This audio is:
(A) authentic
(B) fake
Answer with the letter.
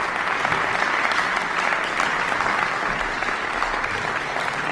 A